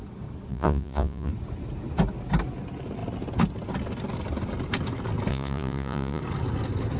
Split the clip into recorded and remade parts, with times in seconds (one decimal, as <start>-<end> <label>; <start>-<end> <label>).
0.0-0.5 recorded; 0.5-1.3 remade; 1.3-5.3 recorded; 5.3-6.2 remade; 6.2-7.0 recorded